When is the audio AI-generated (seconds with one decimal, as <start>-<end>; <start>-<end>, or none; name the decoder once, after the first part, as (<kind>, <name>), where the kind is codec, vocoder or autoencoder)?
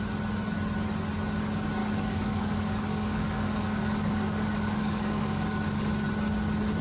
1.8-5.9 (codec, DAC)